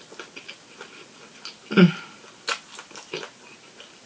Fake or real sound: real